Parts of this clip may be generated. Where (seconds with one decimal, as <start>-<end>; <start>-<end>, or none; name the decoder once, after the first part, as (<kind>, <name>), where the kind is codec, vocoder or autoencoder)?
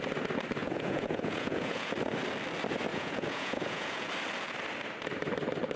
0.6-1.9 (vocoder, Vocos); 2.9-4.1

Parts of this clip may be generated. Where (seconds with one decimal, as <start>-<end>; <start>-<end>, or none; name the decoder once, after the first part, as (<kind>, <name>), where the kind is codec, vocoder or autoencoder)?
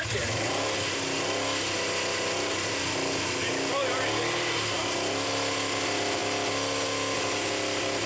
none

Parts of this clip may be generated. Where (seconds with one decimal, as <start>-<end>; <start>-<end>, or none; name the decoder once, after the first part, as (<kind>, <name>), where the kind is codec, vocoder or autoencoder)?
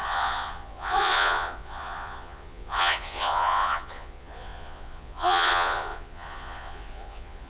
0.0-7.5 (vocoder, Vocos)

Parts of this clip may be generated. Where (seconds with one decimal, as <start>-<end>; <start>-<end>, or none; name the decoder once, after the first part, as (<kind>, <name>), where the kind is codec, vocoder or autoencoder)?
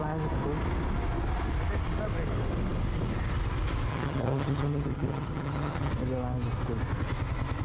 3.9-5.9 (vocoder, HiFi-GAN)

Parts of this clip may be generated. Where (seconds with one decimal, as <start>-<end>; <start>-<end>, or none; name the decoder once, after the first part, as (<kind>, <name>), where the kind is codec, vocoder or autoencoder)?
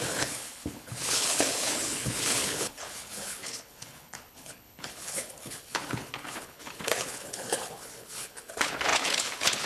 0.0-9.7 (codec, HILCodec)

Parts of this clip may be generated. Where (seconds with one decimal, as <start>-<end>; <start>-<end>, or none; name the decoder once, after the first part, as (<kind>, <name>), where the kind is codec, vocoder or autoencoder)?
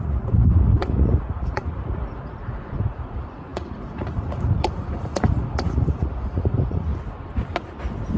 0.0-6.9 (vocoder, Vocos)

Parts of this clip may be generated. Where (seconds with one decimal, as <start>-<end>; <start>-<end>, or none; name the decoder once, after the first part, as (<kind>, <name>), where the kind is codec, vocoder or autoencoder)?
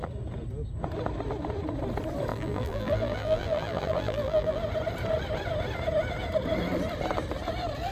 2.3-4.6 (vocoder, BigVGAN v2)